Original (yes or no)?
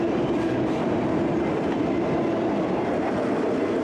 yes